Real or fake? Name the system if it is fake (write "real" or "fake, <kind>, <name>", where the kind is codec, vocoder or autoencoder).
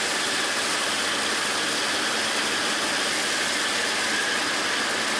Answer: real